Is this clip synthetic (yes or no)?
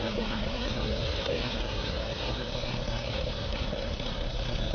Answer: yes